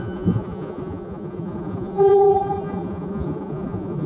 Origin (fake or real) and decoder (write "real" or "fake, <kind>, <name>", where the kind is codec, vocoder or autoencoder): fake, vocoder, Vocos